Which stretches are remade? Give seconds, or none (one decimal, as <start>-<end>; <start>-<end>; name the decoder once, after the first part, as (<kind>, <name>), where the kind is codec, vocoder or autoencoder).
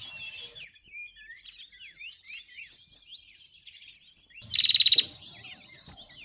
none